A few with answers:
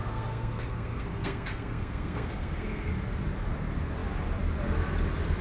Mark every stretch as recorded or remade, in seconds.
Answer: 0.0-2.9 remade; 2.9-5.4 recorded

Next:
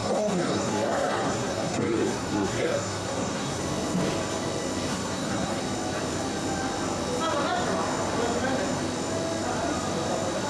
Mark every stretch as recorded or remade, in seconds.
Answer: 0.0-3.6 remade; 3.6-4.9 recorded; 4.9-5.6 remade; 5.6-10.5 recorded

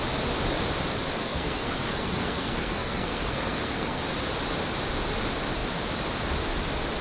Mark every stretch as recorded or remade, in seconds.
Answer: 0.0-1.2 recorded; 1.2-4.0 remade; 4.0-7.0 recorded

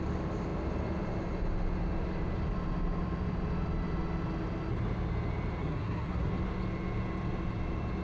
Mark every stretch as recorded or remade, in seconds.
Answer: 0.0-5.6 recorded; 5.6-6.3 remade; 6.3-8.0 recorded

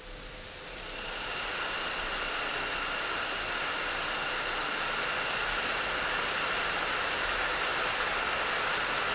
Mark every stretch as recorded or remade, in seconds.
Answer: 0.0-9.1 recorded